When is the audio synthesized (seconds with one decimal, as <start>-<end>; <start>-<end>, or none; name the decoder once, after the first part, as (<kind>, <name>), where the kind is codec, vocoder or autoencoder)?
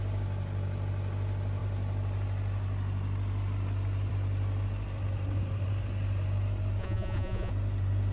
6.8-7.5 (vocoder, Vocos)